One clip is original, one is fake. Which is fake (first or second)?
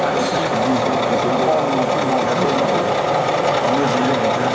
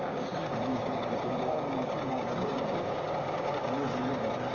second